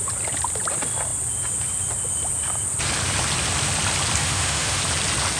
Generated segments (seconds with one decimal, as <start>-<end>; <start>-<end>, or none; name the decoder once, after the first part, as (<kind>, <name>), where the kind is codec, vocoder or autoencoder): 4.2-4.8 (autoencoder, DAC-VAE)